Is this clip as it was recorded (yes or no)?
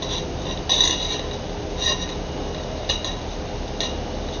yes